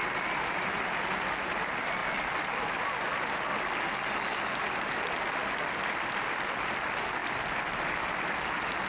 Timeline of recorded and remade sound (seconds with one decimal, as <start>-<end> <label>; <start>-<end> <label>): 0.0-8.9 recorded